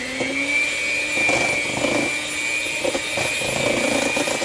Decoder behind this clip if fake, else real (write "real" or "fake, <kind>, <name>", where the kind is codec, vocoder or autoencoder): real